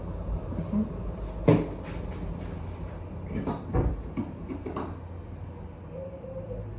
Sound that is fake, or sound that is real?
real